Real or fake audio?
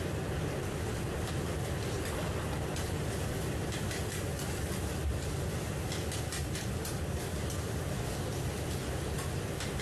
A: real